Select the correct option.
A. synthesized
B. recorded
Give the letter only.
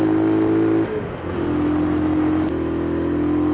B